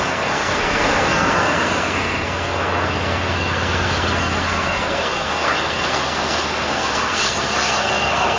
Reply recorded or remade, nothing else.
remade